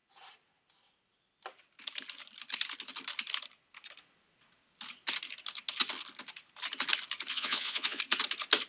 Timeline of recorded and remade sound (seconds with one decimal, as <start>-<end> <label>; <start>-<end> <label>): 0.0-7.3 recorded; 7.3-8.0 remade; 8.0-8.7 recorded